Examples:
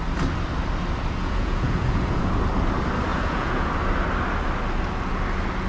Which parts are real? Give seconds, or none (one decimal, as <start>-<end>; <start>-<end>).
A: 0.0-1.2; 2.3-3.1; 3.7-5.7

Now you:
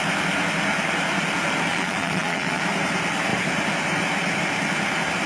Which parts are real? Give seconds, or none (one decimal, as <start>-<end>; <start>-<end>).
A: 0.0-1.7; 2.6-5.3

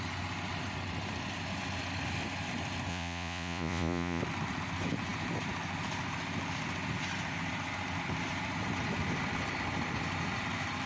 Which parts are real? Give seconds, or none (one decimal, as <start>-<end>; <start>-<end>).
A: 0.0-2.9; 4.2-10.9

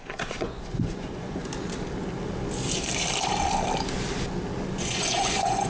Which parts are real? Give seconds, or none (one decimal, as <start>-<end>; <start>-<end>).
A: 1.4-4.8